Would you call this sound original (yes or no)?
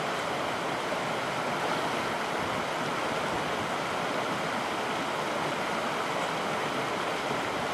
yes